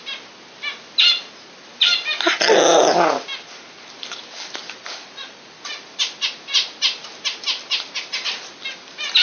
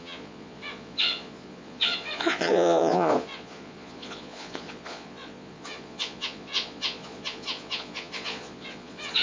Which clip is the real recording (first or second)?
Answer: first